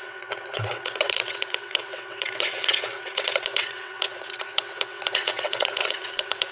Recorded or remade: remade